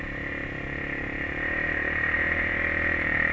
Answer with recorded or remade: recorded